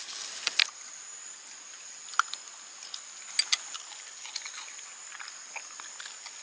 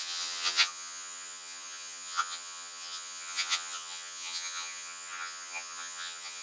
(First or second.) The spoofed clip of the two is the second